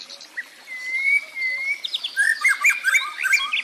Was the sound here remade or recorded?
recorded